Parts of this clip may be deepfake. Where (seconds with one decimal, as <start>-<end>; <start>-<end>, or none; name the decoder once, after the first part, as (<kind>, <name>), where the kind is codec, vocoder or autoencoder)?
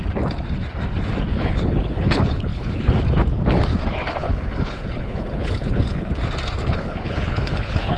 1.3-3.0 (codec, HILCodec); 4.2-6.1; 6.6-8.0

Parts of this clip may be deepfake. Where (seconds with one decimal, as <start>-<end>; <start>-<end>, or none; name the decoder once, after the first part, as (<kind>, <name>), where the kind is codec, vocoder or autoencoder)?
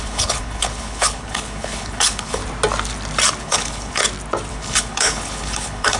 0.0-2.4 (codec, HILCodec); 3.4-4.0; 4.5-6.0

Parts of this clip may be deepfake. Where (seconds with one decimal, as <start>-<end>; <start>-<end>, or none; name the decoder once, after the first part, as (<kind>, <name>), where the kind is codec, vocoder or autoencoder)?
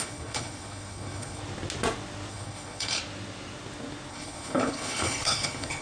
0.0-1.4 (codec, HILCodec); 2.3-3.0; 4.1-5.8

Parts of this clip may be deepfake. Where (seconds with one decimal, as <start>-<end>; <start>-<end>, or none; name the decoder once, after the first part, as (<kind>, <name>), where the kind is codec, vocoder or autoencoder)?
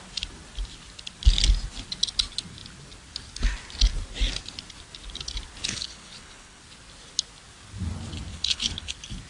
5.6-6.6 (codec, HILCodec); 8.3-8.9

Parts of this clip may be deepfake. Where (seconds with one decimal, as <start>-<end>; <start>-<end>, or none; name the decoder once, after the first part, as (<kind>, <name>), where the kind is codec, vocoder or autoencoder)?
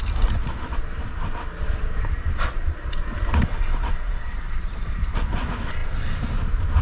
none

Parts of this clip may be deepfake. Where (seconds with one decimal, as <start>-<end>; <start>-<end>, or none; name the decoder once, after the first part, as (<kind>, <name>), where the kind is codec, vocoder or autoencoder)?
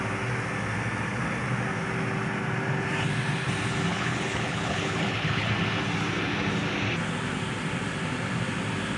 3.9-5.5 (codec, HILCodec)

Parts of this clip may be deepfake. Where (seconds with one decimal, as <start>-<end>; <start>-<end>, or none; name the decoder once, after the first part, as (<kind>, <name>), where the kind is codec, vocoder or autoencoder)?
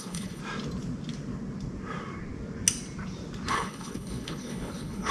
0.0-0.4 (codec, HILCodec); 3.5-5.1